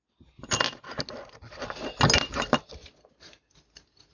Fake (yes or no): no